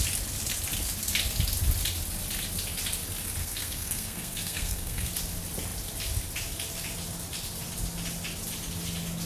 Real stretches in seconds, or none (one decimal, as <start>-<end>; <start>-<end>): 0.0-3.4; 5.1-9.3